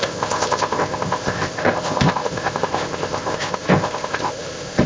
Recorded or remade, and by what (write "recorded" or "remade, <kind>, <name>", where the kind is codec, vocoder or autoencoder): remade, codec, ZipCodec